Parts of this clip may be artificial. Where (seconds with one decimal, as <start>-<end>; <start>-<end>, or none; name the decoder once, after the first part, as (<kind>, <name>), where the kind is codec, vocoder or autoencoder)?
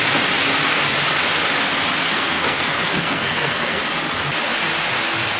2.0-3.8 (codec, SNAC)